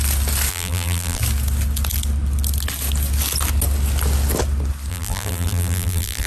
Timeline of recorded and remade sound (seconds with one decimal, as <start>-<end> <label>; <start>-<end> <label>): 0.0-0.5 recorded; 0.5-1.2 remade; 1.2-4.9 recorded; 4.9-6.3 remade